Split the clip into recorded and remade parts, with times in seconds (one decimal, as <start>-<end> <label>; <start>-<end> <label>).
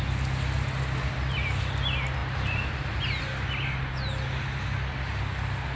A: 0.0-2.2 recorded; 2.2-3.2 remade; 3.2-5.8 recorded